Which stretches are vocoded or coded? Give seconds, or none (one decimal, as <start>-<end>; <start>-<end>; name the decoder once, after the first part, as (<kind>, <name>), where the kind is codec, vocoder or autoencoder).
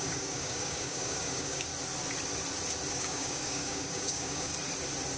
0.0-1.7 (codec, DAC); 2.9-4.5